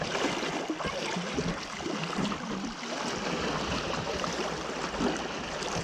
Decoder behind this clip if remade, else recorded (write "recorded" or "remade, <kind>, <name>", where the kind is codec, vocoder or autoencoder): recorded